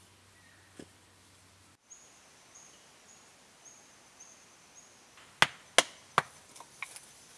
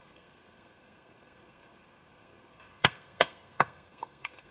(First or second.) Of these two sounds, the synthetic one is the second